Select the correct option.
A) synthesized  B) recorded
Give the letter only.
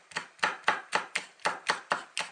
B